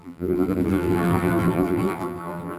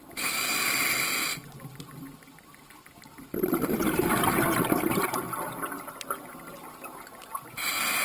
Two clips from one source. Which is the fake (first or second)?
first